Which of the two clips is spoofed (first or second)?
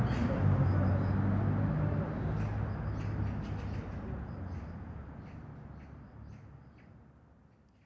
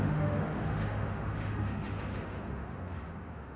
second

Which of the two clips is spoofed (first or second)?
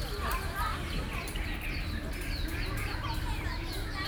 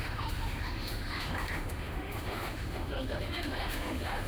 second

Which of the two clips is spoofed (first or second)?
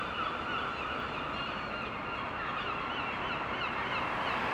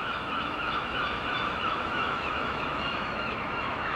second